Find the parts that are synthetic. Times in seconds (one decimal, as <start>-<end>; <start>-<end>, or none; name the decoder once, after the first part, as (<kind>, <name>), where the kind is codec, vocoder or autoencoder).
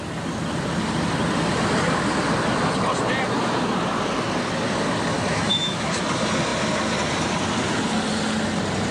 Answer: 5.3-6.0 (autoencoder, DAC-VAE)